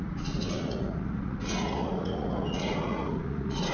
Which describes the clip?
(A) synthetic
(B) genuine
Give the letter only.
A